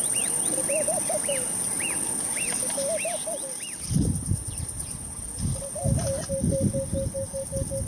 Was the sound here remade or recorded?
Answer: recorded